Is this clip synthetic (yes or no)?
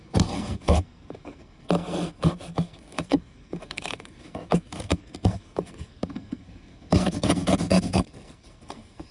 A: yes